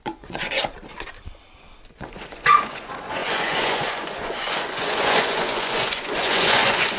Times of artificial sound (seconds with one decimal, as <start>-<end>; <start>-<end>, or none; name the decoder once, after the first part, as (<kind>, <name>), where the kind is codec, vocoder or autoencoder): 0.0-0.6 (vocoder, Vocos); 1.9-7.0